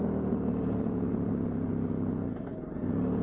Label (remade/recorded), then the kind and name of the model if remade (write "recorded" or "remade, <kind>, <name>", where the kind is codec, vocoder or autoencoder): recorded